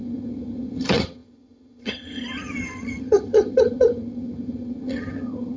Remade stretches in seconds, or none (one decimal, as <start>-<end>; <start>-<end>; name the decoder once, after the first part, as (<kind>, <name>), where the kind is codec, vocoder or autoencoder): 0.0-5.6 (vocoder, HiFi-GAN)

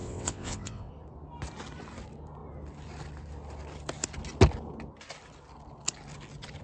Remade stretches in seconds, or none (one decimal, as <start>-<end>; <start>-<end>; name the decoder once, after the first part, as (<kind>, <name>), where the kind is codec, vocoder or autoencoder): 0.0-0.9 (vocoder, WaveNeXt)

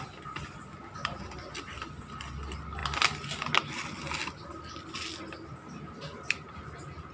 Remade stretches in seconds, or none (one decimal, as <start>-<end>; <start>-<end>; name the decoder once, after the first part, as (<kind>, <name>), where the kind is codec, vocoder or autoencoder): none

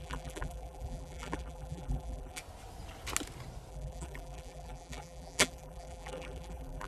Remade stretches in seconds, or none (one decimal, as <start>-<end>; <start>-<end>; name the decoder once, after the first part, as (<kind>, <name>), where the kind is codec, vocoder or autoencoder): 0.0-2.4 (vocoder, BigVGAN v2); 3.7-6.9

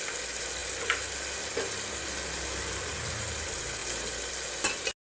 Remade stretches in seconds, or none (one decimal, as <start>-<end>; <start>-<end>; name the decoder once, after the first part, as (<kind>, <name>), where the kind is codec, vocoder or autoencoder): none

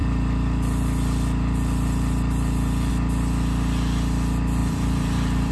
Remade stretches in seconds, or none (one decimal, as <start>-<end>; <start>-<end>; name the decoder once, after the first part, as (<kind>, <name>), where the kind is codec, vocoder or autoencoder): 0.0-2.9 (vocoder, BigVGAN v2); 4.6-5.5

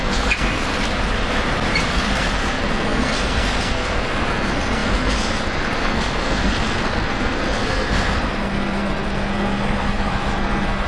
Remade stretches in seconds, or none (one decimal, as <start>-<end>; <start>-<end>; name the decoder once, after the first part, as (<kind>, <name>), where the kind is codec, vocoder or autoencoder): 0.0-0.7 (codec, SNAC); 1.9-10.9

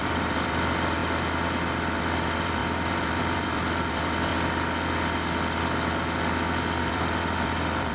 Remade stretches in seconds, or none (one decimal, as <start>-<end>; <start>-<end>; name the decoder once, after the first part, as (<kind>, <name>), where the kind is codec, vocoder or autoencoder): 0.0-1.0 (vocoder, BigVGAN v2); 2.0-4.3; 6.8-7.9